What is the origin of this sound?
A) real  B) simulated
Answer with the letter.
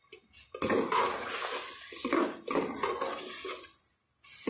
A